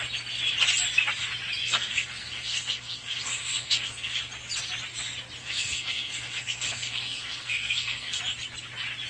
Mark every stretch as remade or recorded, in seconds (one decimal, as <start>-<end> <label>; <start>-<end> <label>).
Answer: 0.0-1.6 recorded; 1.6-4.2 remade; 4.2-5.4 recorded; 5.4-8.2 remade; 8.2-9.1 recorded